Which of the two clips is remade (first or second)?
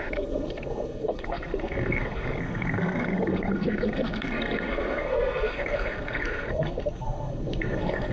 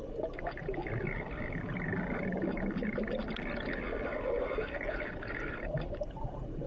first